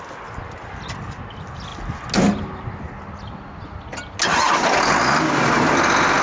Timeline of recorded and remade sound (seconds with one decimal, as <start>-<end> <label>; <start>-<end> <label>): 0.0-6.2 recorded